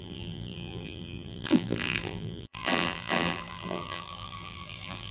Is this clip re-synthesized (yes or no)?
yes